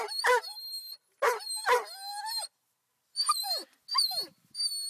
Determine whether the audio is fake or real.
real